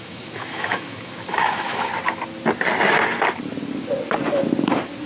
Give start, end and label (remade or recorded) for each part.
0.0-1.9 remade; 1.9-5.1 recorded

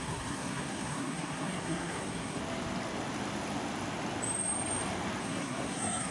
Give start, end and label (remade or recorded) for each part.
0.0-2.4 remade; 2.4-5.2 recorded; 5.2-6.1 remade

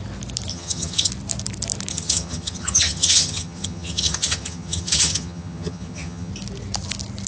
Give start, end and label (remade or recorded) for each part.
0.0-0.5 recorded; 0.5-1.1 remade; 1.1-1.9 recorded; 1.9-6.3 remade; 6.3-7.3 recorded

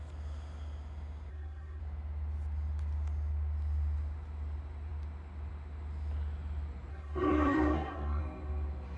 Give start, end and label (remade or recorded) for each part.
0.0-1.3 recorded; 1.3-1.8 remade; 1.8-6.9 recorded; 6.9-8.2 remade; 8.2-9.0 recorded

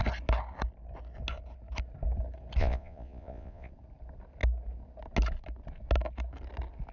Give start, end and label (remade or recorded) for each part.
0.0-2.6 recorded; 2.6-3.7 remade; 3.7-6.9 recorded

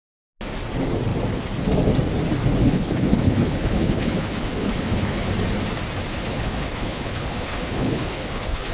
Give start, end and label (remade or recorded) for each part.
0.0-2.6 recorded; 2.6-5.3 remade; 5.3-6.1 recorded; 6.1-8.7 remade

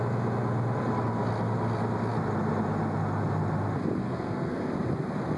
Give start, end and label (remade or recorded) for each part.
0.0-4.0 recorded; 4.0-4.7 remade; 4.7-5.4 recorded

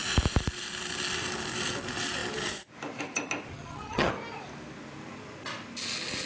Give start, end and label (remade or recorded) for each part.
0.0-3.5 recorded; 3.5-4.1 remade; 4.1-6.3 recorded